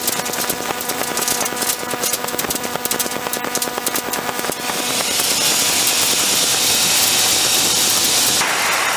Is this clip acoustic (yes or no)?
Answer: yes